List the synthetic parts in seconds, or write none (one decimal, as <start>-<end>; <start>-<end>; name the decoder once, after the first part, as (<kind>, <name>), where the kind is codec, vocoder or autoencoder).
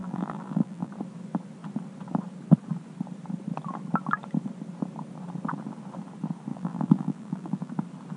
0.0-0.9 (vocoder, BigVGAN v2); 6.5-7.7